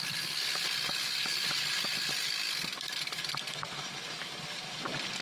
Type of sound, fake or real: real